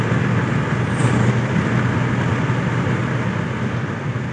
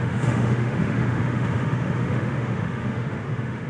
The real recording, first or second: first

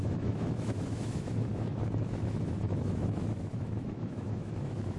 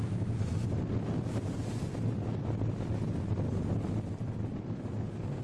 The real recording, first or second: second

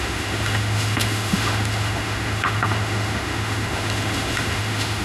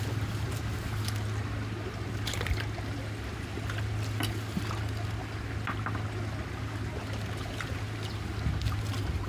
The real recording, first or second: second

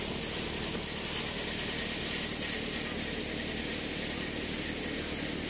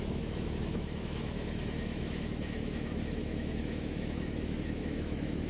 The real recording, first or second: first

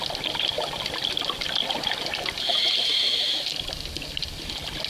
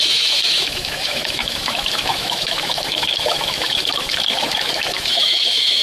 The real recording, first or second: first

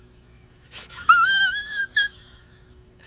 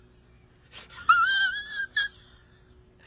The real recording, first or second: second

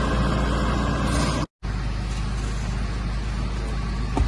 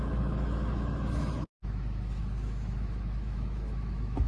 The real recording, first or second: first